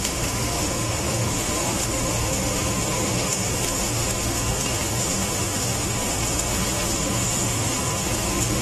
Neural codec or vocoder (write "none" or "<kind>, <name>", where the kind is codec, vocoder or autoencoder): autoencoder, DAC-VAE